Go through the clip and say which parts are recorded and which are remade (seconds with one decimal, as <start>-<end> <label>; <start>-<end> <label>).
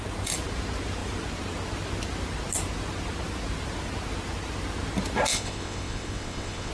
0.0-5.3 recorded; 5.3-6.7 remade